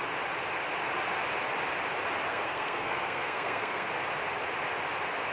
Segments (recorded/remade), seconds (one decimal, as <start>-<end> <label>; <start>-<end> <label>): 0.0-2.3 recorded; 2.3-3.9 remade; 3.9-5.3 recorded